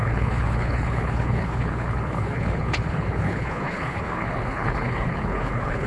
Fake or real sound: fake